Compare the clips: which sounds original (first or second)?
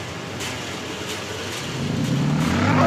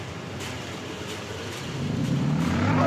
first